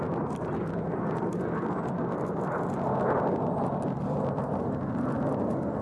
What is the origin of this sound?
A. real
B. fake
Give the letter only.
A